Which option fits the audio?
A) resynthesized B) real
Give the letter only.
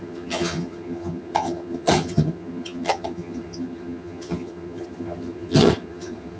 A